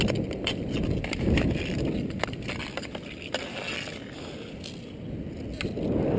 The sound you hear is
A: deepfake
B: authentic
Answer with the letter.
B